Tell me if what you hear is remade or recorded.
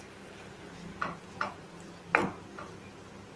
recorded